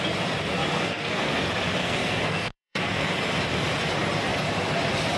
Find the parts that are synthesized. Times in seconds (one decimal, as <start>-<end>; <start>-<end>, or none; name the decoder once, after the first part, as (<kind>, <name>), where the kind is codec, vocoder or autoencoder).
0.7-1.4 (codec, SNAC); 1.8-3.1

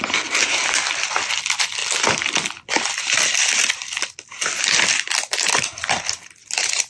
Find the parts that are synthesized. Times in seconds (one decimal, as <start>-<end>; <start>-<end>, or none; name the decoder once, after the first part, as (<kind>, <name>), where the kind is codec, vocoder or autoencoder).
none

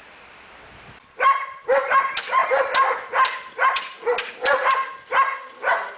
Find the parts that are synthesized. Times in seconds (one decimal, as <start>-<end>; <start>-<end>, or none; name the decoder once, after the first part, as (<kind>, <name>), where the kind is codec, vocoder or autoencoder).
none

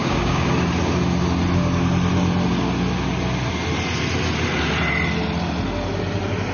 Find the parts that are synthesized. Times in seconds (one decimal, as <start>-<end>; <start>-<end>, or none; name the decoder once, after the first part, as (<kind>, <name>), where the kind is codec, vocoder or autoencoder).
0.0-0.5 (codec, DAC)